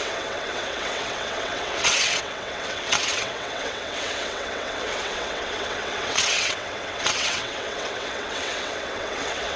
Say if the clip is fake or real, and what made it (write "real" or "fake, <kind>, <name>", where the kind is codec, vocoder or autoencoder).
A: fake, vocoder, WaveNeXt